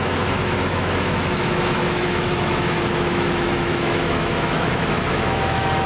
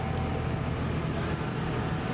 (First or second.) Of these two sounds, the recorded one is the second